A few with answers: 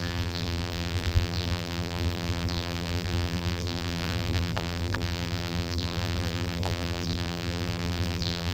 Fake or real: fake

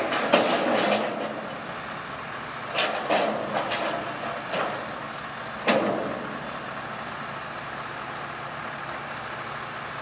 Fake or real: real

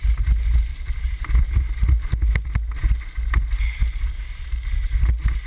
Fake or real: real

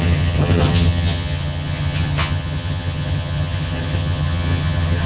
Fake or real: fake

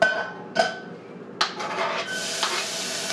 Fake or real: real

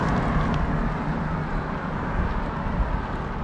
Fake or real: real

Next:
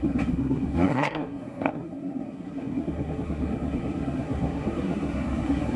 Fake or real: fake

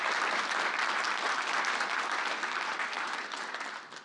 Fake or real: real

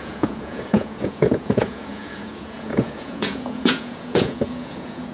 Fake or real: fake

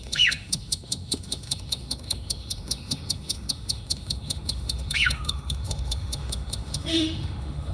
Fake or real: fake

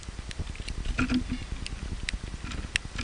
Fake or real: real